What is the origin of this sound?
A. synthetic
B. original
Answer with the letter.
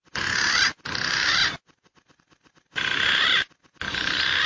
B